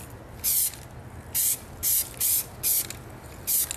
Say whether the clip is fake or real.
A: real